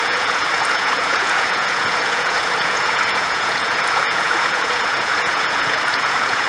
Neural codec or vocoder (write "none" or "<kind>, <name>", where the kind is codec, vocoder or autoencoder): vocoder, Vocos